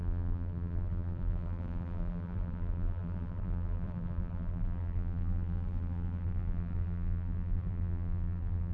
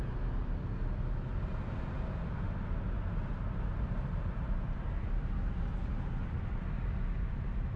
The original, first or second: second